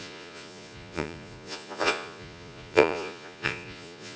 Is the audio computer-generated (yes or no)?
yes